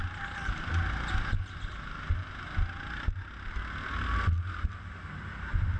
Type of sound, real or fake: real